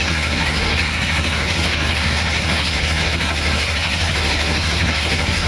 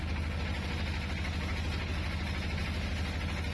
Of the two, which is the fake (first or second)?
first